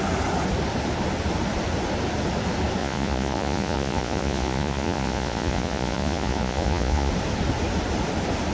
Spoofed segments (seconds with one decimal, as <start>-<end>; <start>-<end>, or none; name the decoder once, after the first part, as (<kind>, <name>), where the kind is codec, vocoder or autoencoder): 2.8-7.1 (vocoder, Vocos)